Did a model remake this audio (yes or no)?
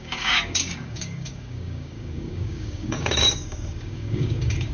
yes